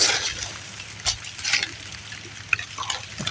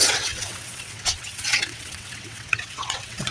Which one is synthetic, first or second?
second